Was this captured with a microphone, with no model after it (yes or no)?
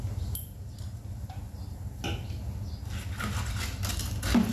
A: yes